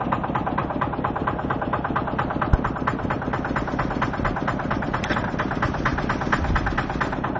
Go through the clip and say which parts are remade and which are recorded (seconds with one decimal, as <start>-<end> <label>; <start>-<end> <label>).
0.0-7.4 recorded